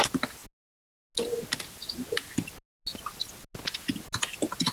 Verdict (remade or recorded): recorded